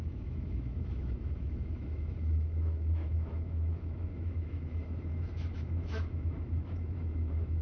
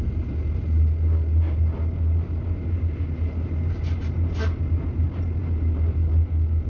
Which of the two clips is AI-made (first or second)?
first